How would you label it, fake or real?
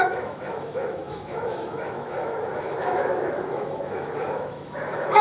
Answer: fake